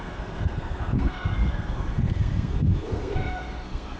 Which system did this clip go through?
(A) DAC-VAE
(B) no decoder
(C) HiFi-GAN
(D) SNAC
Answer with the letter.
D